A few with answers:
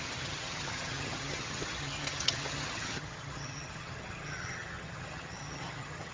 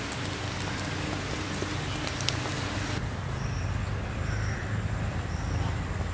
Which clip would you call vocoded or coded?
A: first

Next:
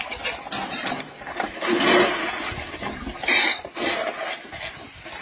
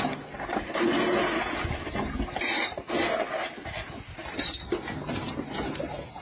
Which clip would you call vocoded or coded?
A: first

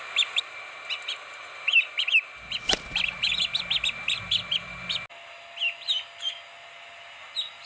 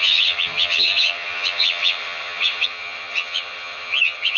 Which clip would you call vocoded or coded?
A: second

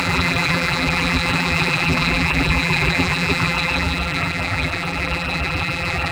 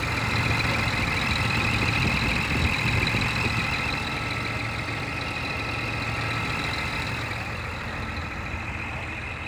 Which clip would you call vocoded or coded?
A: first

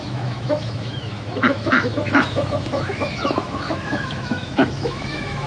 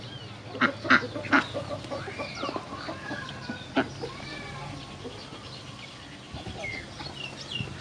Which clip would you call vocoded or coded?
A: first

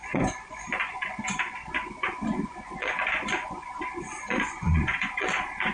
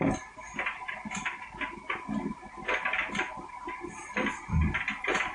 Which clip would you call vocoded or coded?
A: first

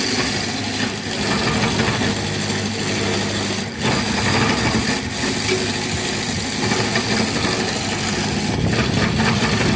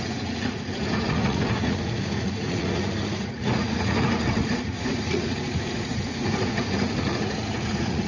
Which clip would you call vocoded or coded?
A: second